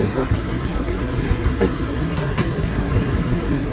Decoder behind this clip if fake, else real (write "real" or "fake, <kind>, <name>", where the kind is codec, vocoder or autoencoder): fake, codec, SNAC